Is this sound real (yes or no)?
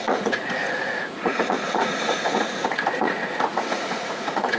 no